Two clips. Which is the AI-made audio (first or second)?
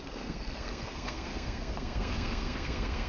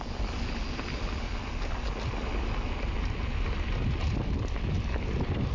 first